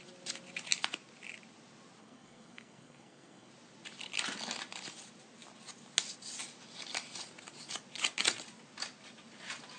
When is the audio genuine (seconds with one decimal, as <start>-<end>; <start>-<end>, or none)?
0.0-2.0; 3.5-9.8